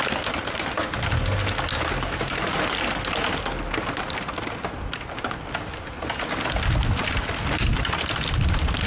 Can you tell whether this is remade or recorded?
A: recorded